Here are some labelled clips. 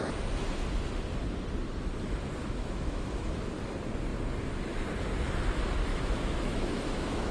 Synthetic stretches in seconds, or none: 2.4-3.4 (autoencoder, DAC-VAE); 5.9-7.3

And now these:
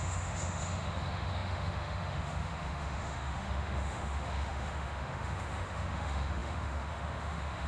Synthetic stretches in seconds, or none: 0.0-7.7 (autoencoder, DAC-VAE)

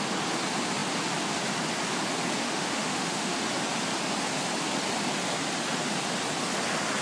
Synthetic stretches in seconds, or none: 2.4-3.5 (autoencoder, DAC-VAE)

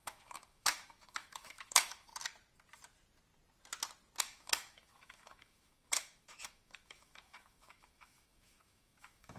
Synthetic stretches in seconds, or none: 0.0-2.1 (autoencoder, DAC-VAE); 4.2-9.4